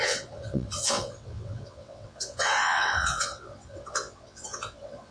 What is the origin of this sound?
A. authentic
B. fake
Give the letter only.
B